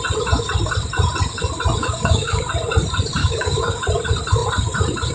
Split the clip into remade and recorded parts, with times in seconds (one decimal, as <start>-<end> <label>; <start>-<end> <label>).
0.0-1.8 recorded; 1.8-2.4 remade; 2.4-3.2 recorded; 3.2-3.8 remade; 3.8-5.1 recorded